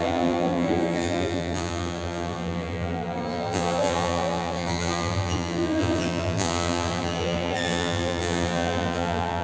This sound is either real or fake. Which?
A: fake